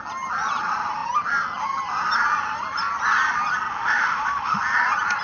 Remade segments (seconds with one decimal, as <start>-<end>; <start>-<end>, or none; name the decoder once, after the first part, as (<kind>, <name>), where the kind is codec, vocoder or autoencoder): 3.7-4.6 (autoencoder, DAC-VAE)